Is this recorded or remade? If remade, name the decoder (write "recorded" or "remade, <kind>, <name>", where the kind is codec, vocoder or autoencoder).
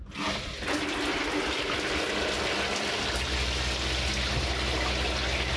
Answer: recorded